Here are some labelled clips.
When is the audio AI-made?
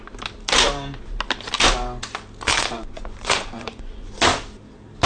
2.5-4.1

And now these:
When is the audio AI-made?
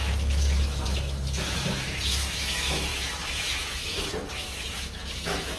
0.0-5.6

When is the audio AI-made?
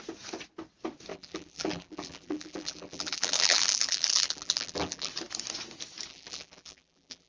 1.1-5.1; 6.1-7.3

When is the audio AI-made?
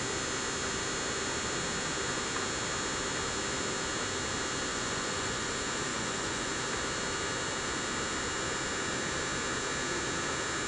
4.7-5.5; 5.9-6.5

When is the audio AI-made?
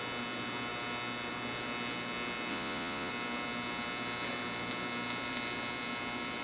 2.5-3.1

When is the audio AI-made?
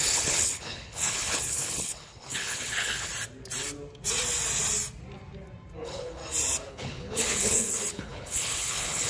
0.0-3.1; 5.8-6.2; 6.7-9.1